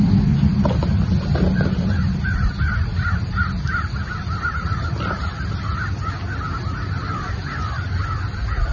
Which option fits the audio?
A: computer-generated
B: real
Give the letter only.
B